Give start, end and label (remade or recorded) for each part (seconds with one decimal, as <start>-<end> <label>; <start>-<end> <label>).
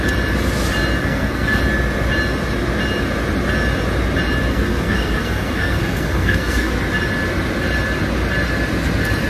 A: 0.0-1.0 recorded; 1.0-1.6 remade; 1.6-4.5 recorded; 4.5-6.7 remade; 6.7-9.3 recorded